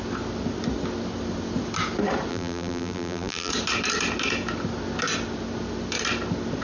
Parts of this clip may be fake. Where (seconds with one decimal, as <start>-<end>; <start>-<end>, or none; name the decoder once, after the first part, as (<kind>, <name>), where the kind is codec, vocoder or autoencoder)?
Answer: 2.3-3.5 (vocoder, BigVGAN v2)